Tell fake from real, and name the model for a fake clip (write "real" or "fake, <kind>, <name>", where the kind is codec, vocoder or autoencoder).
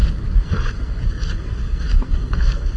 fake, codec, SNAC